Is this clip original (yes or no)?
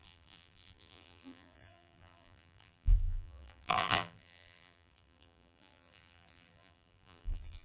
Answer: no